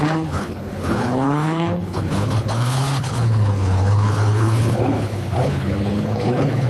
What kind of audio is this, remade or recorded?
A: remade